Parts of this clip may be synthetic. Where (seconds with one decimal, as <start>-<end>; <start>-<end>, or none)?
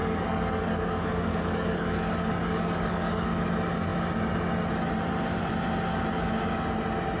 0.0-3.5